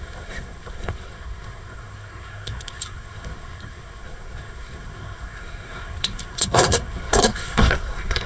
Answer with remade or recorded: remade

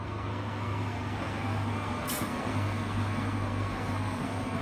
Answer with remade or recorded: remade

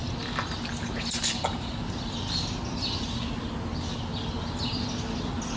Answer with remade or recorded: recorded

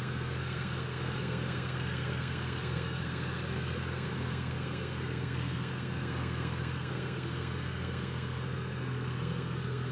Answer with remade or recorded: remade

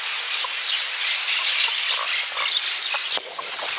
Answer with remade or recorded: recorded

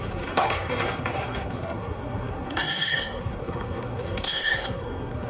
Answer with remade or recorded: remade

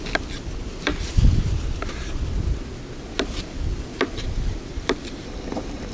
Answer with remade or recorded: recorded